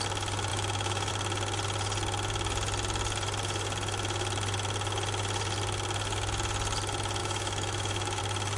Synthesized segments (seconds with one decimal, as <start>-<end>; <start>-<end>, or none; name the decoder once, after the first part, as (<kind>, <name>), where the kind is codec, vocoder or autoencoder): 0.5-1.1 (autoencoder, DAC-VAE); 7.2-8.2